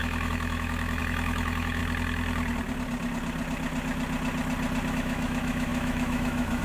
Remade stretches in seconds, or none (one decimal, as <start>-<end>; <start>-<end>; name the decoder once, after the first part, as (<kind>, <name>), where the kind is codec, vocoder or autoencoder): 0.0-1.8 (autoencoder, DAC-VAE); 4.9-6.6

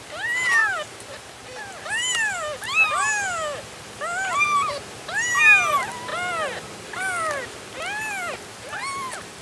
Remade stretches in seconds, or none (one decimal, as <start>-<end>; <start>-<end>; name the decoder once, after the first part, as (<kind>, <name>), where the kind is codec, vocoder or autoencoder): none